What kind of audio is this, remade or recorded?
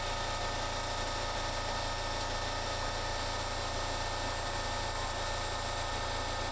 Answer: recorded